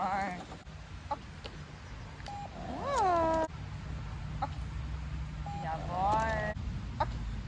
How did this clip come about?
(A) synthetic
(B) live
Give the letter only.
B